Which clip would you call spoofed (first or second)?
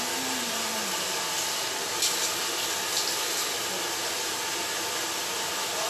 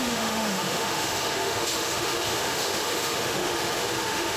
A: second